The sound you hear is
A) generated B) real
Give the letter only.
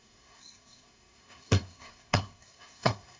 A